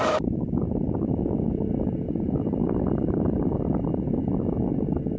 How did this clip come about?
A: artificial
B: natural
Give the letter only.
A